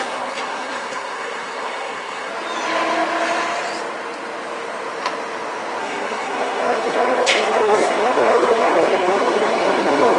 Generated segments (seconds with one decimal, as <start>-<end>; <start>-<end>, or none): 0.0-2.3; 5.8-10.2